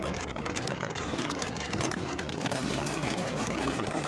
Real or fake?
fake